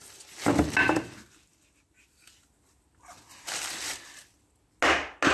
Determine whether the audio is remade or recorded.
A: recorded